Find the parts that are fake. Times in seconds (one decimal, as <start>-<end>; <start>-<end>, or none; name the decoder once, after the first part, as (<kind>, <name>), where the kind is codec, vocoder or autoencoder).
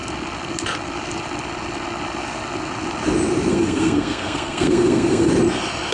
3.5-5.3 (codec, SNAC)